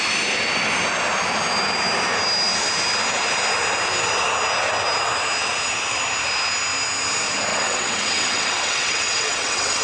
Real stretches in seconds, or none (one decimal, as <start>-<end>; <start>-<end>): 0.0-7.5